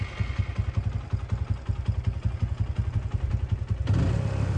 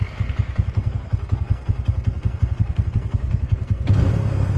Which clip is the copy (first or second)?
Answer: second